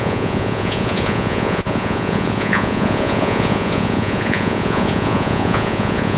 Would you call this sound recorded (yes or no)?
no